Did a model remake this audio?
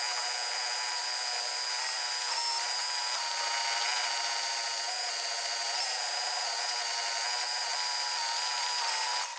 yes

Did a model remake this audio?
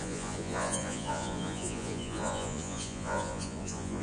yes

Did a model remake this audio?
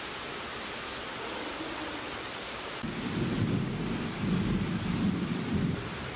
no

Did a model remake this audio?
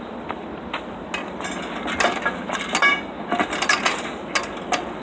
no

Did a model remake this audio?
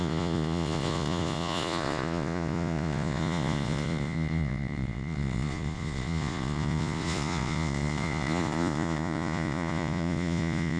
yes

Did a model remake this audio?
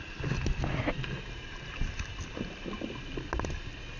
no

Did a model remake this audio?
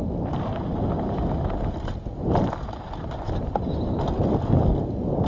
no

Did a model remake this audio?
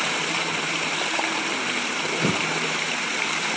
yes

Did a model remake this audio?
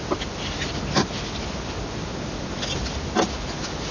no